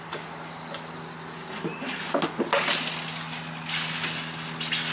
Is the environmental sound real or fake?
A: real